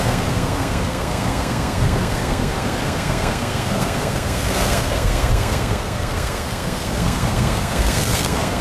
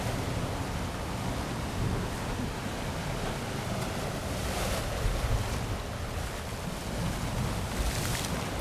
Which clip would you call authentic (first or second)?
second